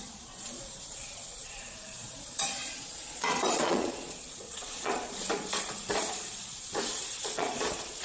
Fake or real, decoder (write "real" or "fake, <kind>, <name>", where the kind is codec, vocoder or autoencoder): fake, vocoder, Vocos